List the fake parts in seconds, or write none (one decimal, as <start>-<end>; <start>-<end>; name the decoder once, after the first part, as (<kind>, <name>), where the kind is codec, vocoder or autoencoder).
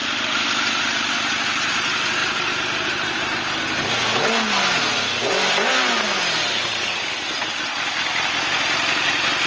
none